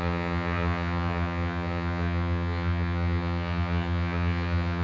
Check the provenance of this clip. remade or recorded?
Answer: remade